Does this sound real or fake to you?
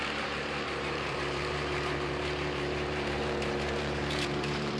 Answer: fake